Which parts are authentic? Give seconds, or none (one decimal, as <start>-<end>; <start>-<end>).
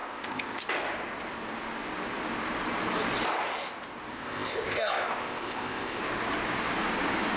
0.6-4.1; 6.0-7.4